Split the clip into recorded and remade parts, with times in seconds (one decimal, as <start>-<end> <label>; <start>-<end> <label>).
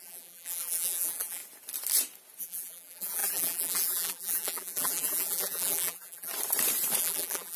0.0-1.4 remade; 1.4-2.4 recorded; 2.4-6.3 remade; 6.3-7.0 recorded; 7.0-7.6 remade